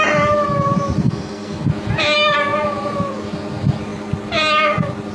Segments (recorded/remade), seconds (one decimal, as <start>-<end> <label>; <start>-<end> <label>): 0.0-1.0 recorded; 1.0-1.7 remade; 1.7-5.1 recorded